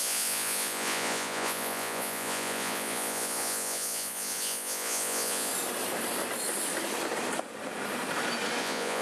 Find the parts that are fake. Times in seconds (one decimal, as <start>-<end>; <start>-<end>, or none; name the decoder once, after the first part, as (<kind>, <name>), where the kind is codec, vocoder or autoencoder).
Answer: 0.0-5.5 (vocoder, Vocos); 8.6-9.0